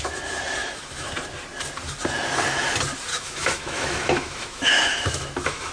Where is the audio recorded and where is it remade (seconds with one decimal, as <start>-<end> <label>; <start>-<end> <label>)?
0.0-0.6 recorded; 0.6-1.1 remade; 1.1-3.1 recorded; 3.1-5.7 remade